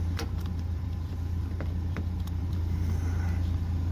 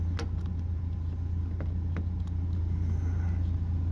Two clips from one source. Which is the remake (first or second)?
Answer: first